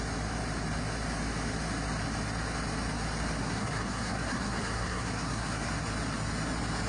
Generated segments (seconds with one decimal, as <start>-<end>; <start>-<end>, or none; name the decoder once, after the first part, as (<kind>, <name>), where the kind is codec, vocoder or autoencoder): 3.4-5.7 (codec, SNAC)